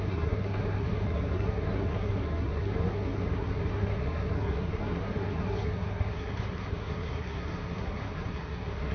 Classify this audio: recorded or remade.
remade